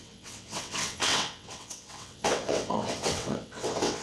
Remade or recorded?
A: remade